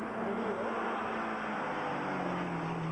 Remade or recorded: recorded